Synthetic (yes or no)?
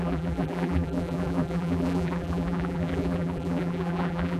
yes